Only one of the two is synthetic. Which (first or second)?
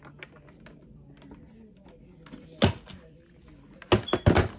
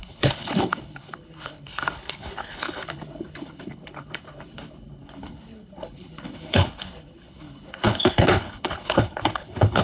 second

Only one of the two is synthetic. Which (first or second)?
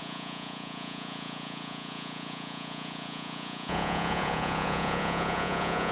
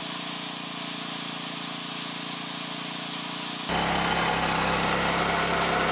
first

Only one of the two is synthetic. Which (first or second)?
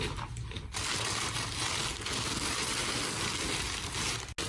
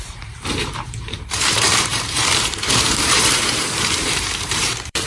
second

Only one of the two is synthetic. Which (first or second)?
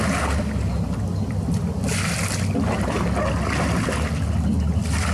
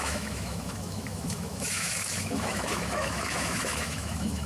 second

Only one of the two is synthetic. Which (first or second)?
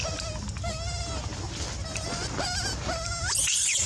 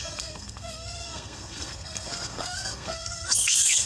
second